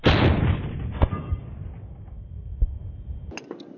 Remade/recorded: recorded